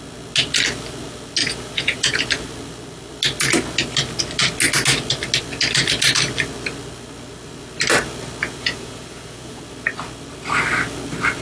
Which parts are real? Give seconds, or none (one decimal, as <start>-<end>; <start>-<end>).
0.0-1.4; 2.2-8.4; 9.6-11.4